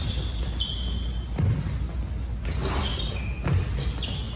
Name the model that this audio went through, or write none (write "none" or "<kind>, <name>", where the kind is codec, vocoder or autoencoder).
none